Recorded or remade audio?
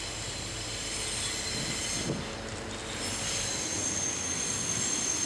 recorded